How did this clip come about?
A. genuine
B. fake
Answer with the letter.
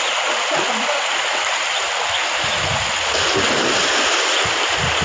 A